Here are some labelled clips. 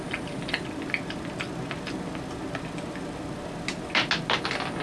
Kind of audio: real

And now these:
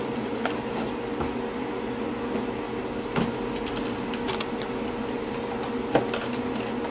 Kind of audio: real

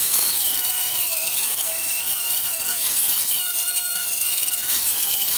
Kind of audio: fake